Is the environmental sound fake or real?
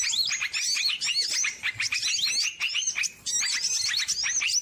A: real